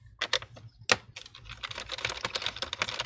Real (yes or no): yes